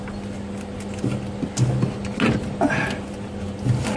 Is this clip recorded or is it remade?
recorded